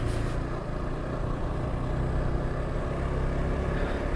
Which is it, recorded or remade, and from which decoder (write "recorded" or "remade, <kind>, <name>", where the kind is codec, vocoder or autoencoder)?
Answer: recorded